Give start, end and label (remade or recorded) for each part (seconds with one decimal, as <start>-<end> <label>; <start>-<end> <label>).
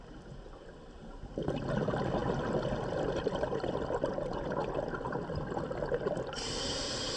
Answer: 0.0-7.2 recorded